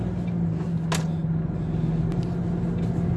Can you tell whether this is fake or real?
real